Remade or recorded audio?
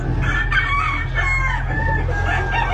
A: recorded